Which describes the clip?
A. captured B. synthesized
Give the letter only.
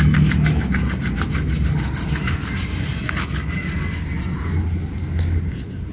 A